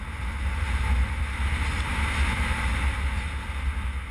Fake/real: real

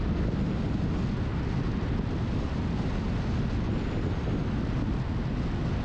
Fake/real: real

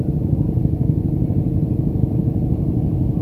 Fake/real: real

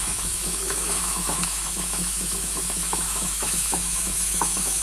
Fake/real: fake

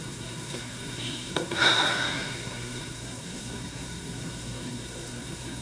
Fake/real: fake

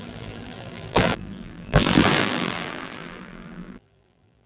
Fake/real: fake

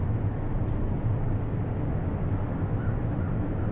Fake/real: real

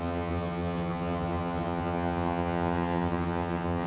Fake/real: fake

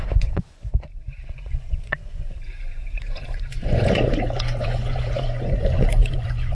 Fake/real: fake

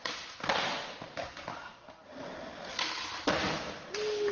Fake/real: real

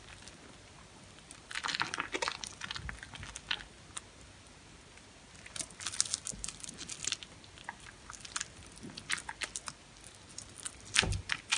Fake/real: real